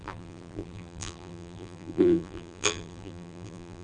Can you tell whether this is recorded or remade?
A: remade